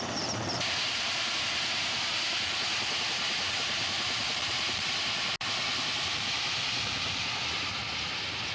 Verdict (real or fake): real